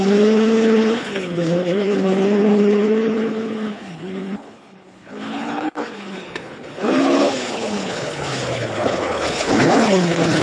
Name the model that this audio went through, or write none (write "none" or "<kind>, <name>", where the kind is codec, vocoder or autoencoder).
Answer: codec, HILCodec